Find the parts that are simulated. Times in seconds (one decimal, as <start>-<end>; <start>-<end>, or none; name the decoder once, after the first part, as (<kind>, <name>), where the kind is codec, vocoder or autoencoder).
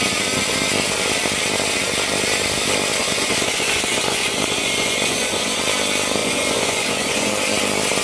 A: 3.0-5.6 (vocoder, Vocos); 6.2-7.3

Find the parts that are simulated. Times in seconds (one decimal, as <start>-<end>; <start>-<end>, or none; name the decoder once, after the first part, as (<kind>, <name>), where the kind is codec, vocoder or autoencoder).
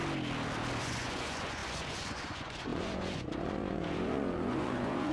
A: 0.8-5.1 (vocoder, Vocos)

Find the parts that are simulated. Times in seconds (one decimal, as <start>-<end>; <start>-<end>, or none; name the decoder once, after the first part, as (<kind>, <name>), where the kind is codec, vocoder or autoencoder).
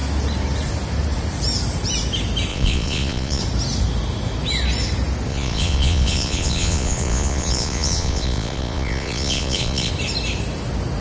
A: 2.5-3.4 (vocoder, Vocos); 5.3-9.9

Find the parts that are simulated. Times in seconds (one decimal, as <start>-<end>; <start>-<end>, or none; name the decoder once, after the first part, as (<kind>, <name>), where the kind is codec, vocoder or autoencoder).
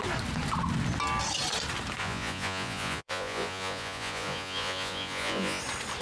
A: 2.0-5.6 (vocoder, Vocos)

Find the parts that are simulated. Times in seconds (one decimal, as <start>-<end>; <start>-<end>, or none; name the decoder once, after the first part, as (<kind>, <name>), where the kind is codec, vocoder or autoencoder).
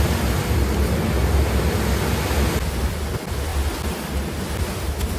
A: none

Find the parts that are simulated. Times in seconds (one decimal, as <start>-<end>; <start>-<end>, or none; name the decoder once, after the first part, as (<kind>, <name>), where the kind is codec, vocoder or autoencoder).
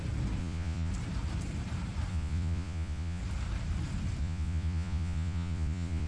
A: 0.4-0.9 (vocoder, Vocos); 2.1-3.2; 4.2-6.1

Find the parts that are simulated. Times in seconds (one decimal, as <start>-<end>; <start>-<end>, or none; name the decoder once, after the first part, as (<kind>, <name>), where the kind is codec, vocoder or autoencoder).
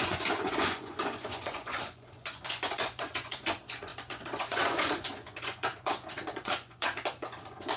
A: 0.0-7.8 (vocoder, Vocos)